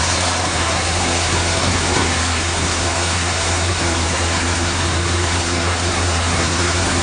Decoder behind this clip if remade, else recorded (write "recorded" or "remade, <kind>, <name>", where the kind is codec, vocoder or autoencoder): remade, codec, SNAC